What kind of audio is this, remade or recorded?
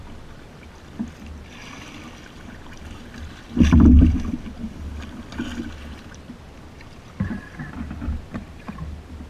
recorded